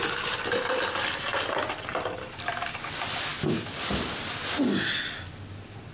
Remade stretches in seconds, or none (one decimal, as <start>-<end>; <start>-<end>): none